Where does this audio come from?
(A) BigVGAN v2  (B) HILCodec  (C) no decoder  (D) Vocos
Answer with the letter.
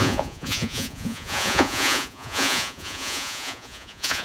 D